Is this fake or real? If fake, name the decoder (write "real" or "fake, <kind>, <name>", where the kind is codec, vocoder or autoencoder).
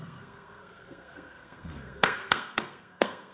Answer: fake, codec, SNAC